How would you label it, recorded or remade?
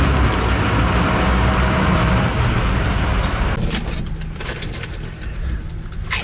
recorded